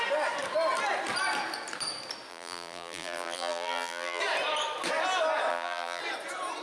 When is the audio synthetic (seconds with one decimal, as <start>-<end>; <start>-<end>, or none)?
2.3-4.2; 5.5-6.0